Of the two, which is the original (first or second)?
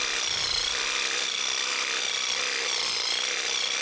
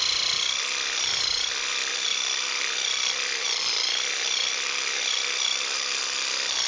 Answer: first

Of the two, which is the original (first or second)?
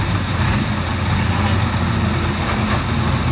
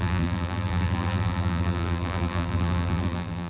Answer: first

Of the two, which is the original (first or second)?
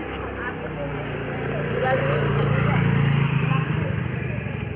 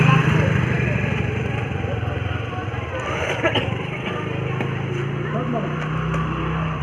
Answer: first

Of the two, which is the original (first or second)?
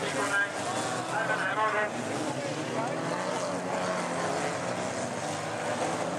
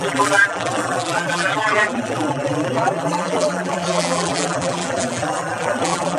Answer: first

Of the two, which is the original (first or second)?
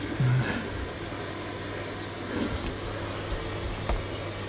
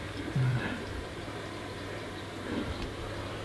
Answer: first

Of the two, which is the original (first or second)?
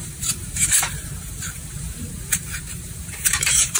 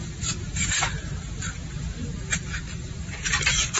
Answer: second